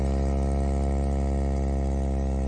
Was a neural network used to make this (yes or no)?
no